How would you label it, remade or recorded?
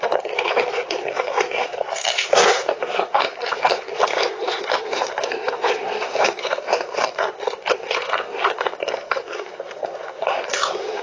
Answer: remade